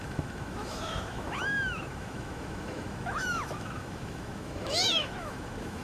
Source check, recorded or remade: remade